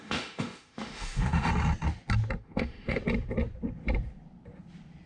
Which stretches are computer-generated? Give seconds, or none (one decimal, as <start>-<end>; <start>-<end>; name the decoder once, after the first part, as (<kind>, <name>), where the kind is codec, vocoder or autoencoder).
0.0-1.5 (autoencoder, DAC-VAE); 2.4-3.0